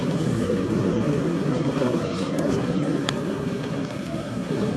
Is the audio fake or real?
fake